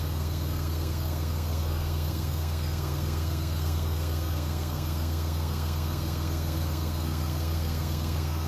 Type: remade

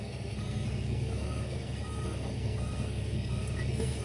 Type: remade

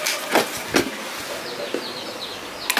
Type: recorded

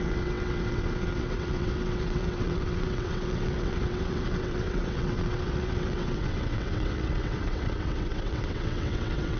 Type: remade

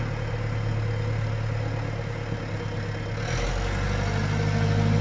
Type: recorded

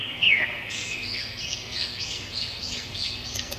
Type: remade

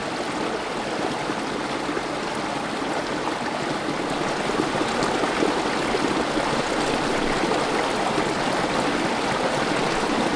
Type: recorded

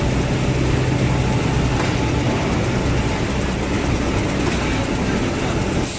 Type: recorded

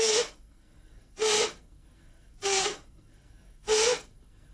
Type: remade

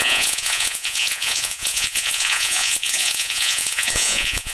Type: remade